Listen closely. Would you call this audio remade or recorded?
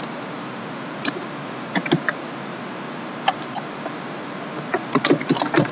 remade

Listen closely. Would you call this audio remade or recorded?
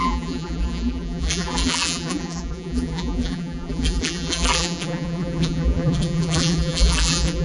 remade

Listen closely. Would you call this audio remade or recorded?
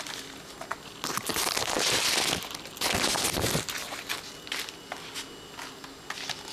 recorded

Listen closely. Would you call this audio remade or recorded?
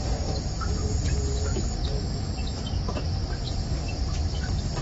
recorded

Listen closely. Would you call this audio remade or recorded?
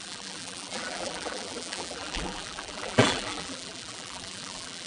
remade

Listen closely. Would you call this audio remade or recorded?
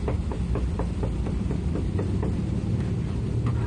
remade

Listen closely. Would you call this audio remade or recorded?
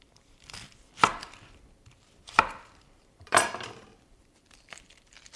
remade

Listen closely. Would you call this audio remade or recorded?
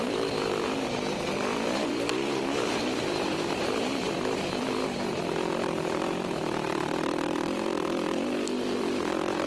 remade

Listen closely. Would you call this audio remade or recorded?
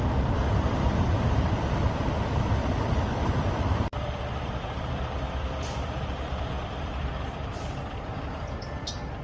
remade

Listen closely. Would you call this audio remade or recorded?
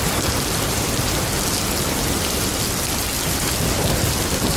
recorded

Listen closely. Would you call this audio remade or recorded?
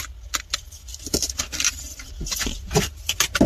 recorded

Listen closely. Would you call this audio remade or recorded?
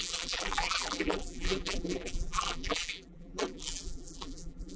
remade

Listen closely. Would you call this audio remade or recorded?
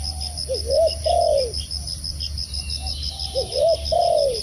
recorded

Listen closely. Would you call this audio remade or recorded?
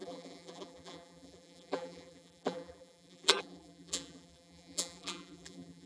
remade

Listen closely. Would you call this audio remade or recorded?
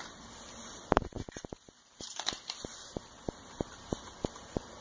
remade